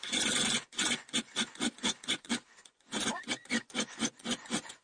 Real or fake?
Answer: fake